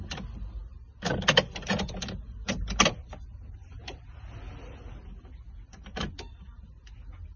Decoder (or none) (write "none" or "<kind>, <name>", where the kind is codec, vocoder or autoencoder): none